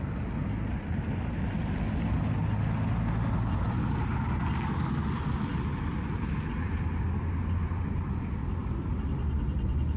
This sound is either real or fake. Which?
real